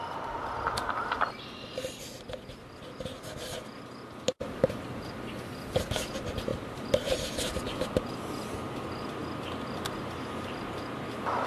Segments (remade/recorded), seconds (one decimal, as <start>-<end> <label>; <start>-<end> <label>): 0.0-6.5 recorded; 6.5-7.3 remade; 7.3-11.5 recorded